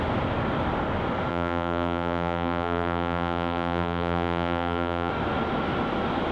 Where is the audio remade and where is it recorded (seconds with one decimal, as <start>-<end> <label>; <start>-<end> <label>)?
0.0-1.3 recorded; 1.3-5.1 remade; 5.1-6.3 recorded